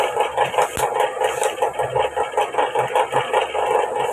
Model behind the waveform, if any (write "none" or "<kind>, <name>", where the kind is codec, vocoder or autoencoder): none